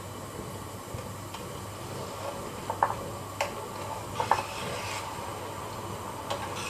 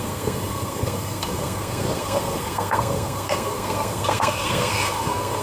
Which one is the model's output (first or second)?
second